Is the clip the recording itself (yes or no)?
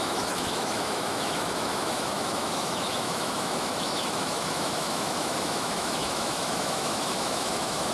no